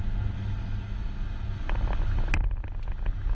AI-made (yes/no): no